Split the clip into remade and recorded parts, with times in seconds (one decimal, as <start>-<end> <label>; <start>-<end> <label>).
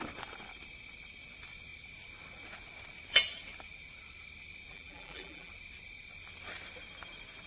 0.0-4.7 recorded; 4.7-5.5 remade; 5.5-7.5 recorded